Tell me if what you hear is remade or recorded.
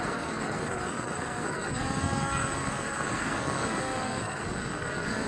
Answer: remade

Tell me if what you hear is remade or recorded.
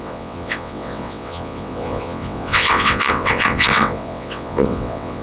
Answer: remade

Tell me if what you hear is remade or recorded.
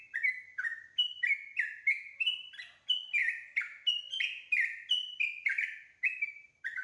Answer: recorded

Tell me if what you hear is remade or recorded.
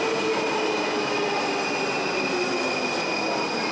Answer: recorded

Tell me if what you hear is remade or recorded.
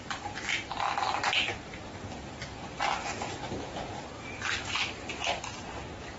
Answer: recorded